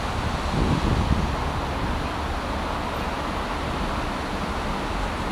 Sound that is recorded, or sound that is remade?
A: recorded